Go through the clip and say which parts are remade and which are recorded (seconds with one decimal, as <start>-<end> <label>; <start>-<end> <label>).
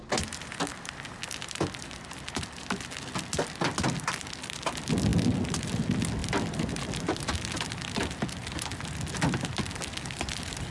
0.0-6.2 recorded; 6.2-7.2 remade; 7.2-10.7 recorded